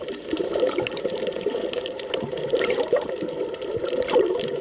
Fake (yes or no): yes